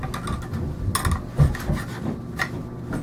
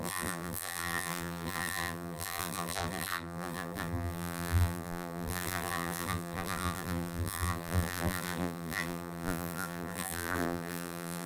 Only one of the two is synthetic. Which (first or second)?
second